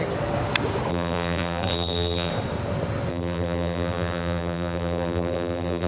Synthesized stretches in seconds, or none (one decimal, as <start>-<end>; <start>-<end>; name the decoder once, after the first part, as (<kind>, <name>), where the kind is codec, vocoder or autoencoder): 0.9-2.3 (vocoder, BigVGAN v2); 3.1-5.9